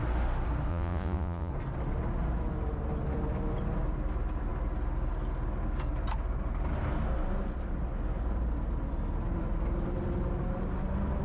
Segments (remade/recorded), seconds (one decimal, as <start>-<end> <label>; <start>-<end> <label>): 0.0-0.7 recorded; 0.7-1.5 remade; 1.5-11.2 recorded